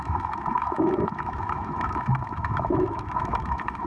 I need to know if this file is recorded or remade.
remade